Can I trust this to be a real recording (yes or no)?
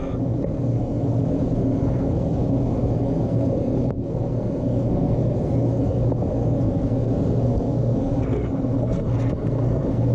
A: no